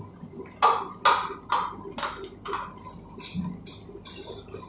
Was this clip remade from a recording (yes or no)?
no